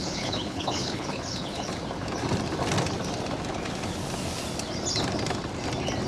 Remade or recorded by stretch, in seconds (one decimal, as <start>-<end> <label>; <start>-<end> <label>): 0.0-1.7 remade; 1.7-6.1 recorded